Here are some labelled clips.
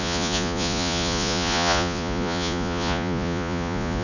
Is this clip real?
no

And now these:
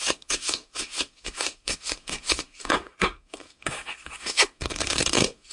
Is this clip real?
no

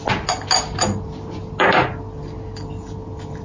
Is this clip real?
yes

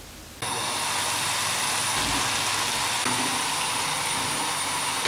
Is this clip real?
yes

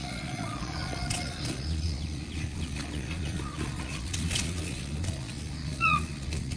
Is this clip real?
no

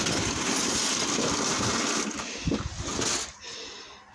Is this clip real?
yes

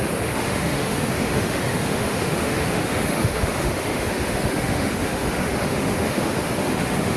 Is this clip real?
no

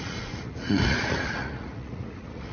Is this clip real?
no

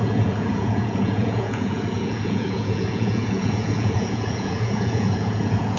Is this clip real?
no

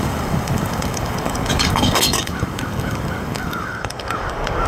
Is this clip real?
no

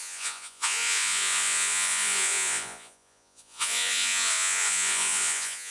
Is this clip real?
no